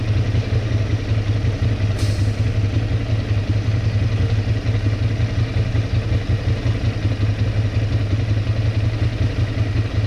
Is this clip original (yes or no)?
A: yes